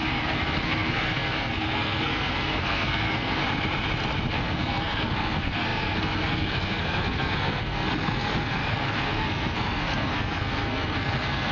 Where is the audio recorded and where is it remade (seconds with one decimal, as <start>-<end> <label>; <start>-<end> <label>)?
0.0-3.4 remade; 3.4-4.3 recorded; 4.3-11.5 remade